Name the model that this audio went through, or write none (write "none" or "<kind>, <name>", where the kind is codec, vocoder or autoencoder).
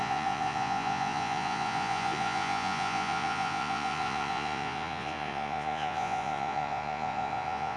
vocoder, Vocos